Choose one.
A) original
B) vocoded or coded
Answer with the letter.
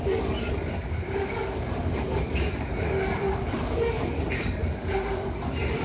B